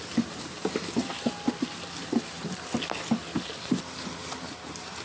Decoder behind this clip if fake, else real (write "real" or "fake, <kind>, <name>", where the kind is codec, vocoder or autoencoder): fake, vocoder, BigVGAN v2